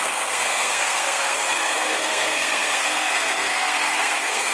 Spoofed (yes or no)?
yes